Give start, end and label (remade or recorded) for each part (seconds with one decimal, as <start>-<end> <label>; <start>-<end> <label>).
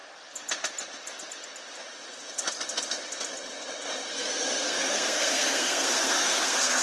0.0-4.1 recorded; 4.1-6.8 remade